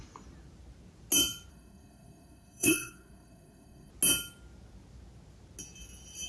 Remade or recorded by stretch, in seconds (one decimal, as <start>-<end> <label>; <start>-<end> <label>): 0.0-1.5 recorded; 1.5-3.9 remade; 3.9-6.3 recorded